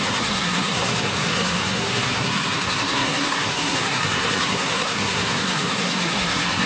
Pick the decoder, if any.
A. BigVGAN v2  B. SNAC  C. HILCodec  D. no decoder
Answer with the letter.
B